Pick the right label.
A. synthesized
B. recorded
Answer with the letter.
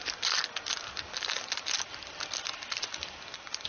B